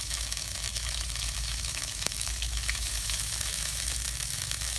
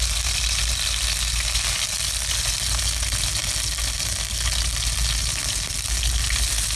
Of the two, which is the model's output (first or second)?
first